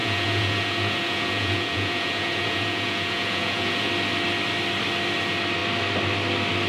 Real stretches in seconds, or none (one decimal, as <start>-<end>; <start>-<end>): 3.9-6.7